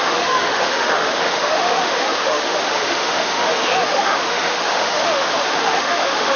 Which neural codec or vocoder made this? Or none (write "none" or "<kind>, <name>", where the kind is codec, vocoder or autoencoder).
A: autoencoder, DAC-VAE